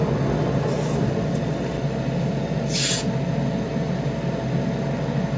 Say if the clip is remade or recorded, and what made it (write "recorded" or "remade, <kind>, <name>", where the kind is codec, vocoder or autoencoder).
recorded